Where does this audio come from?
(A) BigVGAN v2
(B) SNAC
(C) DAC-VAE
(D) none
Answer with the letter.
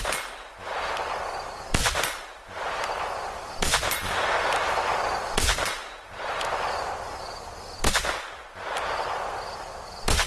D